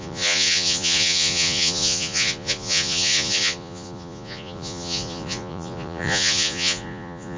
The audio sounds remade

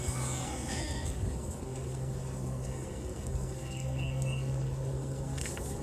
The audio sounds remade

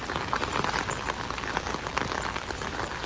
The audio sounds recorded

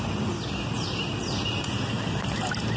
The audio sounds recorded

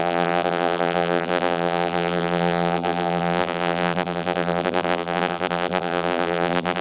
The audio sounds remade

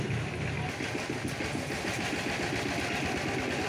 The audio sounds recorded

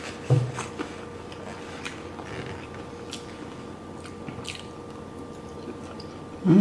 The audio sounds recorded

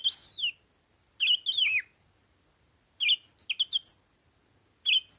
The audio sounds recorded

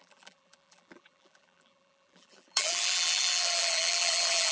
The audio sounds remade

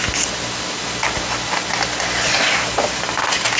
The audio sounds recorded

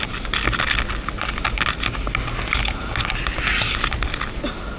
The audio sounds recorded